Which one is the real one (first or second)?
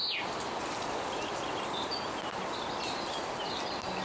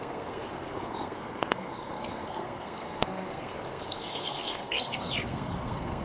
first